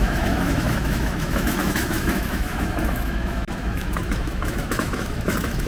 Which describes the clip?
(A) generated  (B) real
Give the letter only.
A